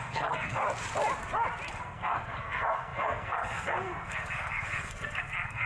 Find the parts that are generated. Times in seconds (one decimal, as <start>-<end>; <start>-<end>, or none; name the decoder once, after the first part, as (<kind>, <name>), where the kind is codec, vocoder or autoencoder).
0.0-0.6 (codec, SNAC); 1.7-5.7